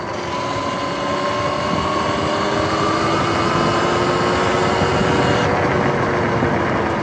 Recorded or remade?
recorded